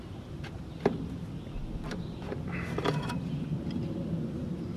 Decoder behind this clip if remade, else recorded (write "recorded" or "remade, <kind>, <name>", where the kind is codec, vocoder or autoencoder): recorded